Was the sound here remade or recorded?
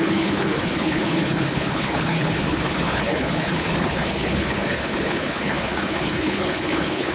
remade